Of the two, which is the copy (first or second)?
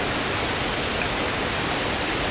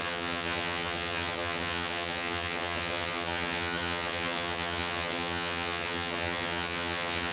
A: second